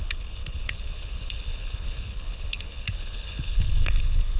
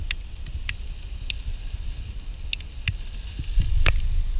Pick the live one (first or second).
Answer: second